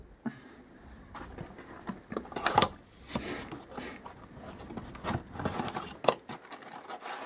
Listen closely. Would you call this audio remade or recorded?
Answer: recorded